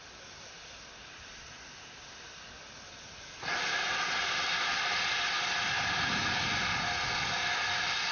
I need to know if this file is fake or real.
real